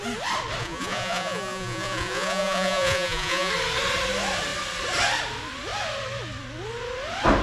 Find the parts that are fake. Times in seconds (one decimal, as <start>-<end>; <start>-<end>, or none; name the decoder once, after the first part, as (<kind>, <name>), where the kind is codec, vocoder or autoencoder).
0.6-3.5 (vocoder, Vocos)